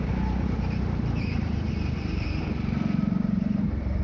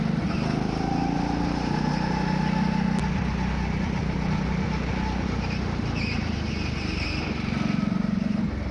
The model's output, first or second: first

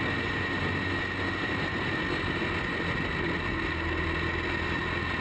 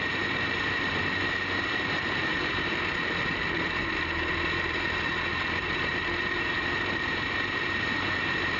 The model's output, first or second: second